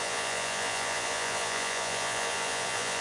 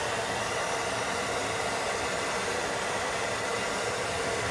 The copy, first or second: first